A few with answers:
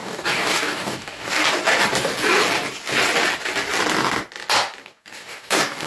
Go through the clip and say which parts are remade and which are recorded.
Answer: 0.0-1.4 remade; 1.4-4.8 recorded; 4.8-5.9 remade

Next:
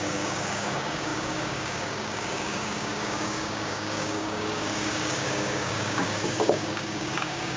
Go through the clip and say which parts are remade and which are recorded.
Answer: 0.0-7.6 remade

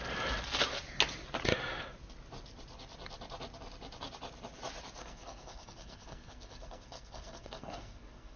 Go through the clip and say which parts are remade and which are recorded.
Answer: 0.0-5.0 recorded; 5.0-8.4 remade